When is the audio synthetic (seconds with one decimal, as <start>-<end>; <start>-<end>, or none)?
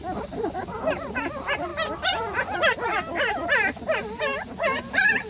none